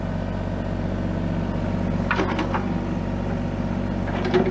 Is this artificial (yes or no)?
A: no